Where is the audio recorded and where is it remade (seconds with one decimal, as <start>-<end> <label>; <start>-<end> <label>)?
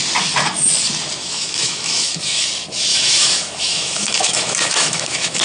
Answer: 0.0-1.2 recorded; 1.2-2.5 remade; 2.5-2.9 recorded; 2.9-5.4 remade